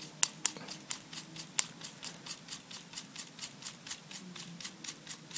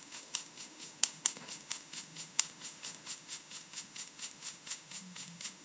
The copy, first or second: second